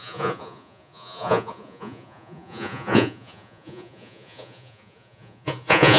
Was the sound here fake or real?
fake